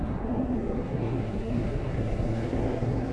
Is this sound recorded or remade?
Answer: remade